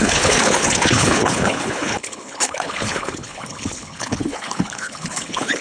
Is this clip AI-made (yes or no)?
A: yes